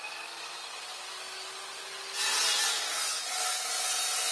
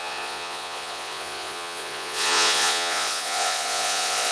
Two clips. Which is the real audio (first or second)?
first